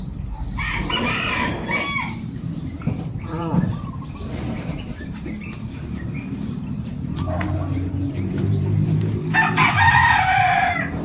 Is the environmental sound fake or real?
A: fake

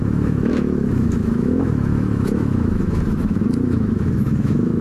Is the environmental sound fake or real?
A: fake